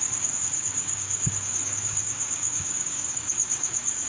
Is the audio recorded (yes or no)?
no